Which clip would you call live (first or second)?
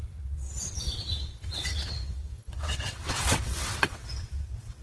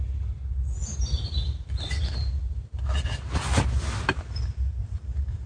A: second